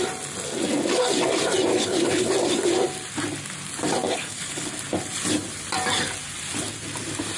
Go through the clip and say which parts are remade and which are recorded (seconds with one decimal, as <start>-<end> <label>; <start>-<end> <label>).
0.0-1.7 recorded; 1.7-2.3 remade; 2.3-4.2 recorded; 4.2-4.7 remade; 4.7-7.4 recorded